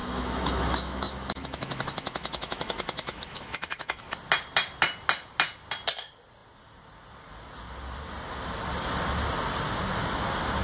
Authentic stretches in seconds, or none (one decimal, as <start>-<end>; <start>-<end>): 4.0-10.6